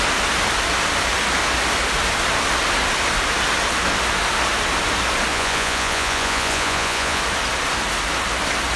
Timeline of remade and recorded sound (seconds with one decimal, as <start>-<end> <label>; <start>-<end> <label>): 0.0-5.3 recorded; 5.3-7.2 remade; 7.2-8.8 recorded